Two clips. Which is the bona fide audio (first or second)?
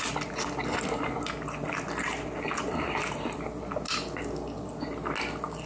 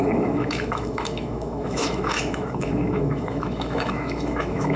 first